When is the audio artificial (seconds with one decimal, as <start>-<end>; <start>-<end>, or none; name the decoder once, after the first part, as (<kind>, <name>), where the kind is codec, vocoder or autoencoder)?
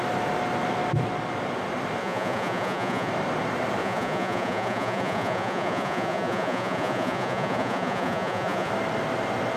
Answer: 2.0-3.1 (vocoder, Vocos); 3.8-8.7